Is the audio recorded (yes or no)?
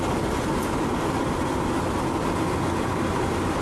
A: yes